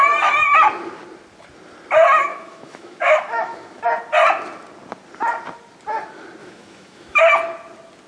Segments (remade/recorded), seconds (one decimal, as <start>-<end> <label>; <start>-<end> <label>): 0.0-2.3 recorded; 2.3-3.8 remade; 3.8-6.4 recorded; 6.4-7.2 remade; 7.2-8.1 recorded